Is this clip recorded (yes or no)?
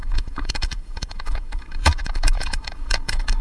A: no